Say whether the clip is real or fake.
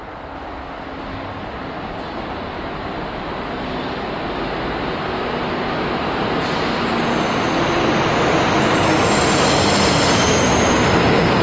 real